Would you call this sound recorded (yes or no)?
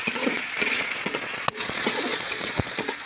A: no